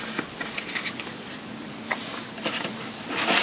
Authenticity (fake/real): real